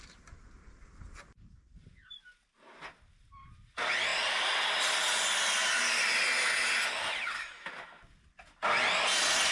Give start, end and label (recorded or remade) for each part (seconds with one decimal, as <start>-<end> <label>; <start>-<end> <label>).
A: 0.0-9.5 recorded